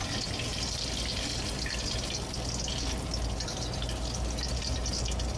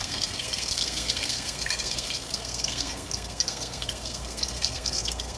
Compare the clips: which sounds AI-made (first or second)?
second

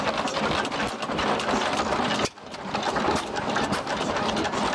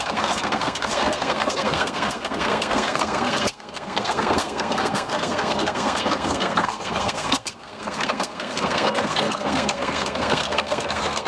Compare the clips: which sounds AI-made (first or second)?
second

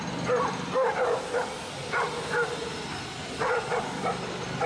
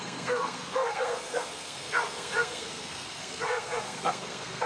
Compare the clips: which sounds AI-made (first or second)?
second